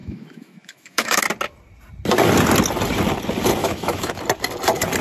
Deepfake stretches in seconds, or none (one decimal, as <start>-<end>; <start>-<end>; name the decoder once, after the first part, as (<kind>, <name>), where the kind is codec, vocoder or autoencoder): 0.0-1.2 (autoencoder, DAC-VAE); 3.6-4.2